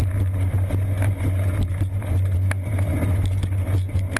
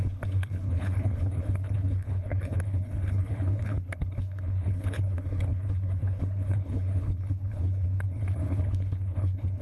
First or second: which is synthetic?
second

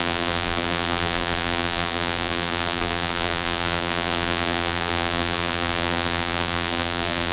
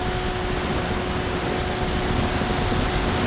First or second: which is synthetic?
first